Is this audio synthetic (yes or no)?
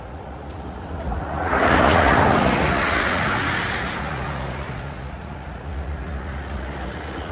yes